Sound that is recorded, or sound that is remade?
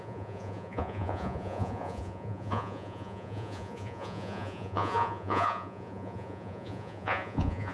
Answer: remade